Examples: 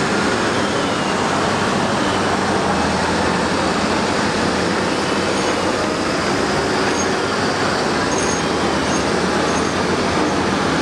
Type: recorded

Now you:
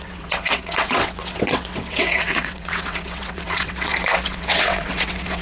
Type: remade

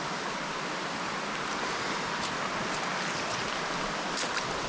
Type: recorded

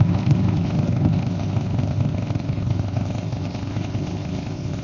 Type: remade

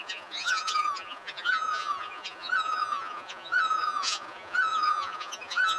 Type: remade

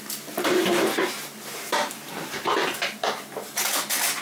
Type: remade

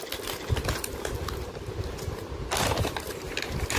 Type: recorded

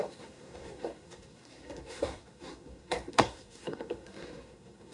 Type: remade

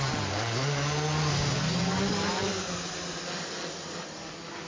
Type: recorded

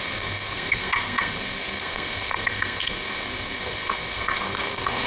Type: remade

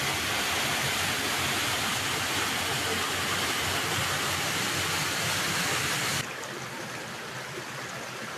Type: recorded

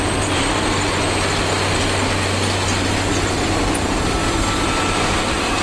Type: recorded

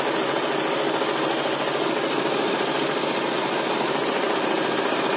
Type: recorded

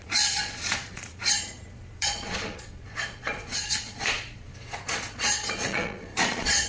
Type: remade